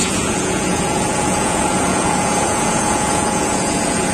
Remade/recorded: remade